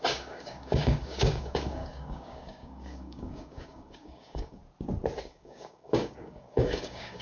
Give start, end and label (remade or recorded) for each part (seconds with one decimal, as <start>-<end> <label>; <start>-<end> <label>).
0.0-4.6 remade; 4.6-5.2 recorded; 5.2-7.2 remade